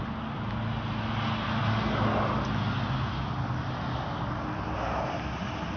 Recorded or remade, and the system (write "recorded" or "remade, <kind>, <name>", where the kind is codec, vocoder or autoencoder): recorded